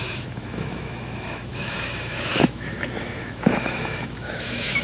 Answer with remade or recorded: remade